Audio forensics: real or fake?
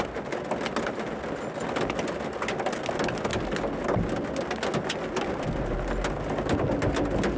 real